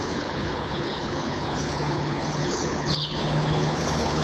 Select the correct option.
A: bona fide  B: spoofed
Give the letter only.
B